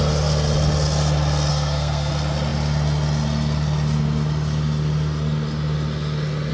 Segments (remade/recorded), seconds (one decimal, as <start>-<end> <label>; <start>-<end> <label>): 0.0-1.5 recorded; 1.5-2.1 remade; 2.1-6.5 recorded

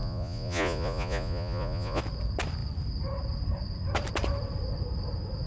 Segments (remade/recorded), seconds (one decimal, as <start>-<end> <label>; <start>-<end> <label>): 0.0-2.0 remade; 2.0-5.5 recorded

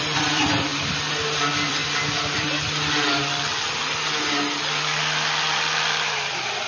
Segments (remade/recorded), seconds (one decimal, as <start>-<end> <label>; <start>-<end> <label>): 0.0-0.7 remade; 0.7-1.4 recorded; 1.4-1.8 remade; 1.8-5.8 recorded; 5.8-6.7 remade

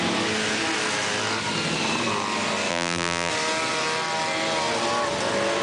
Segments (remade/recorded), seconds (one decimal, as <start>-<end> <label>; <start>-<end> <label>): 0.0-2.7 recorded; 2.7-3.3 remade; 3.3-5.6 recorded

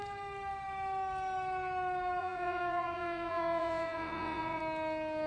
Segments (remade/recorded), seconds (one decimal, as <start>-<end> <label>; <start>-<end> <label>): 0.0-2.2 recorded; 2.2-4.6 remade; 4.6-5.3 recorded

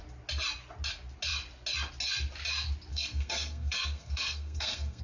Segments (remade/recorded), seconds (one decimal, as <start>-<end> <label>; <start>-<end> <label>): 0.0-2.9 recorded; 2.9-5.0 remade

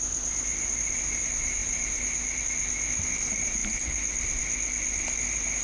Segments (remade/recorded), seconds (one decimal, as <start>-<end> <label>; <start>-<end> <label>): 0.0-5.6 recorded

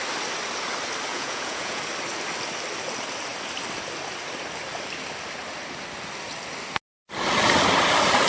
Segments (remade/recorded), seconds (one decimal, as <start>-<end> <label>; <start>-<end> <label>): 0.0-1.1 recorded; 1.1-1.8 remade; 1.8-8.3 recorded